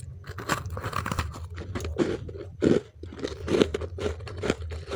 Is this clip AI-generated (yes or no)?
no